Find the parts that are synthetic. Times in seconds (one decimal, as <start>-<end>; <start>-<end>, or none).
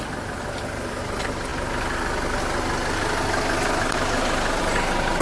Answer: none